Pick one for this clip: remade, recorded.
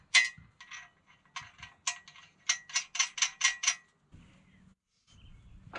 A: recorded